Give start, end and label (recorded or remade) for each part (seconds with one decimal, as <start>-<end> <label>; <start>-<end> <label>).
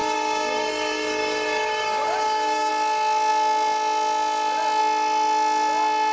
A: 0.0-2.7 remade; 2.7-6.1 recorded